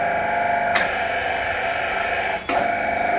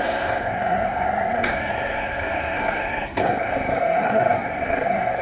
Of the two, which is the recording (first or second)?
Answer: first